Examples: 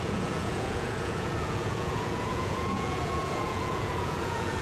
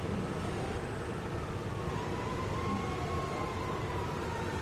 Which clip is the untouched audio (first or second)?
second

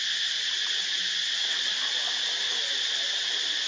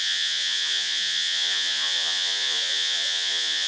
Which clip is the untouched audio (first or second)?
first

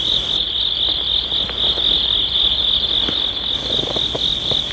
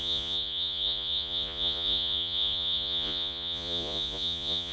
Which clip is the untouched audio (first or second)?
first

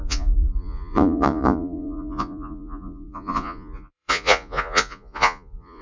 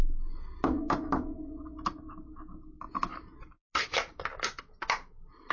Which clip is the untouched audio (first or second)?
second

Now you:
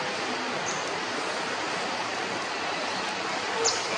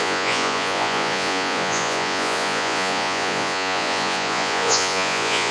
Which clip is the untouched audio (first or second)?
first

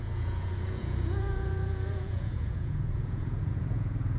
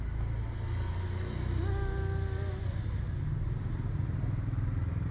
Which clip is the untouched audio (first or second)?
second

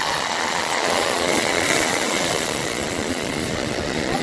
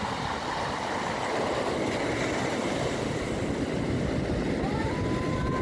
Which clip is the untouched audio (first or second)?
second